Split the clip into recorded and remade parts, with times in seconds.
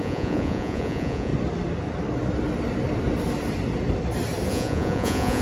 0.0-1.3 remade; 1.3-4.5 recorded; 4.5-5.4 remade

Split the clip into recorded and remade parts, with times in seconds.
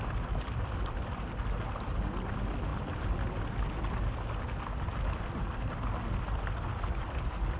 0.0-7.6 recorded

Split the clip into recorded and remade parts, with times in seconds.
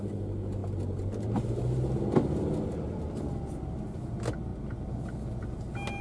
0.0-6.0 recorded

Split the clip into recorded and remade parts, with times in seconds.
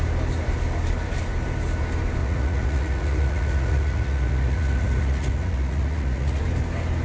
0.0-2.2 recorded; 2.2-6.4 remade; 6.4-7.0 recorded